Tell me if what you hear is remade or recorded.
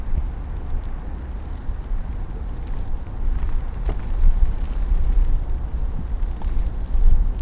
recorded